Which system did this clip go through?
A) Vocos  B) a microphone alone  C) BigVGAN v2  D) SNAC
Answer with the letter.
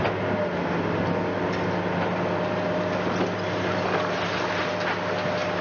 B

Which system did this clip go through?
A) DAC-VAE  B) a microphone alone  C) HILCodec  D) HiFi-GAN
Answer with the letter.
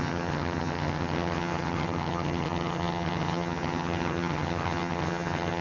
D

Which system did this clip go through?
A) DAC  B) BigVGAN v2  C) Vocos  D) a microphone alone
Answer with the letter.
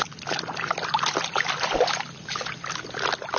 D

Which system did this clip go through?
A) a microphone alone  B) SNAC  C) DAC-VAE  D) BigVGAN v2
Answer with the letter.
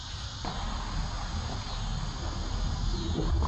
A